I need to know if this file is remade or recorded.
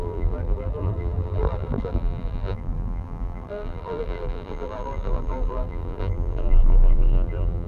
remade